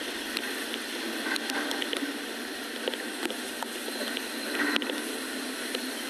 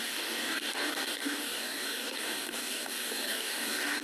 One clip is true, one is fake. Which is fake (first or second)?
second